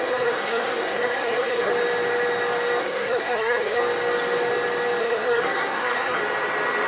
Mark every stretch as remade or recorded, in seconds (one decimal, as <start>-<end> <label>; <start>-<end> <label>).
0.0-1.7 remade; 1.7-2.8 recorded; 2.8-3.8 remade; 3.8-5.0 recorded; 5.0-6.2 remade; 6.2-6.9 recorded